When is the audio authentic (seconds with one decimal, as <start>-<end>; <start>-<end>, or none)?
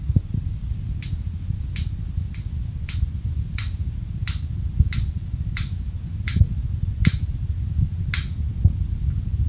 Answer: 0.0-0.6; 4.6-9.5